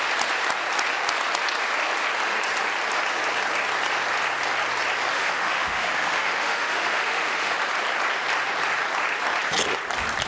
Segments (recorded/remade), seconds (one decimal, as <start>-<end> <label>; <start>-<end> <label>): 0.0-5.1 recorded; 5.1-7.6 remade; 7.6-10.3 recorded